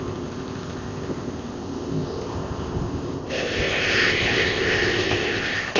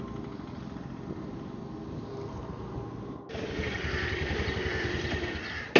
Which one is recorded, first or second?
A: second